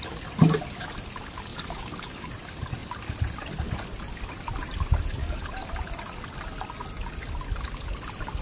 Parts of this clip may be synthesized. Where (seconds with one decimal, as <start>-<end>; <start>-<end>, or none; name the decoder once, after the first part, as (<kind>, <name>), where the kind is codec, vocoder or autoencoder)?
1.5-2.3 (codec, DAC); 5.2-5.7